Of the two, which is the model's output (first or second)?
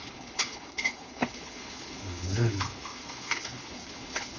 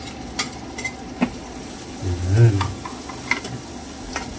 first